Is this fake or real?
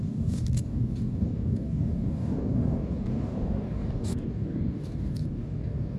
fake